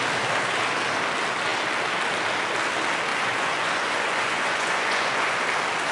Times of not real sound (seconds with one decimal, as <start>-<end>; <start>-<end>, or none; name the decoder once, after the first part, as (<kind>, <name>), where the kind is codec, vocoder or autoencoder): 3.1-5.4 (vocoder, Vocos)